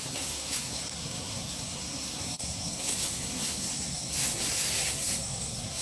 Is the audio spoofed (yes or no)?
yes